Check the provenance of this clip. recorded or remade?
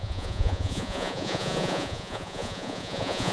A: remade